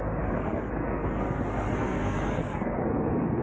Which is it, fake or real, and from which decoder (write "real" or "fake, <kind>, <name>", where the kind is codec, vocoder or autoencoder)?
fake, codec, SNAC